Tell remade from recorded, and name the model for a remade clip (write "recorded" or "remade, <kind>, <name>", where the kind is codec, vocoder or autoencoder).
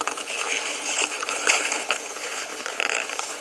remade, codec, HILCodec